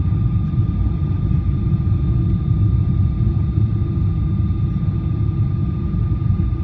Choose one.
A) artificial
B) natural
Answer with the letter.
B